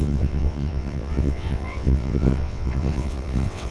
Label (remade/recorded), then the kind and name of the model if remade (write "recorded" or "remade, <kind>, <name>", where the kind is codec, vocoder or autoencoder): remade, vocoder, WaveNeXt